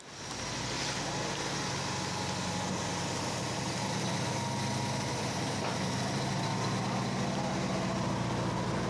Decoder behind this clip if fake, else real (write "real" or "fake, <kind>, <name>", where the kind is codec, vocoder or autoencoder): real